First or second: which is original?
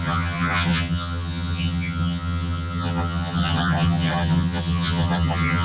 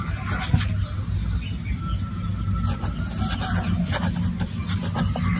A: second